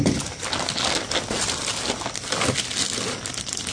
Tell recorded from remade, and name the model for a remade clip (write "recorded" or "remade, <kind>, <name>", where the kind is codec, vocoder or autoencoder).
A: recorded